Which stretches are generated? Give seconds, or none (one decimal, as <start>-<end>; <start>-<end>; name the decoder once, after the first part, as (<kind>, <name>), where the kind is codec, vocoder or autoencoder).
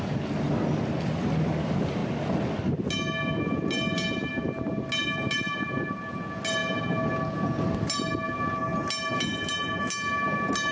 none